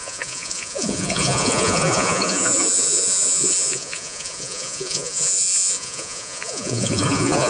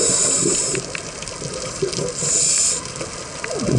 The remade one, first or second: first